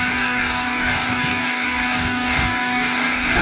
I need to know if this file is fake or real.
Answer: fake